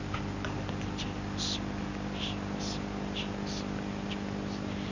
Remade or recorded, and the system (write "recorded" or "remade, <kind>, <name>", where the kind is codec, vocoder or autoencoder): recorded